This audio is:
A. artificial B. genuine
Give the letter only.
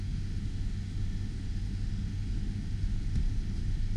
A